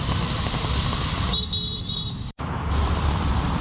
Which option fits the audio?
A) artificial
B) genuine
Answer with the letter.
A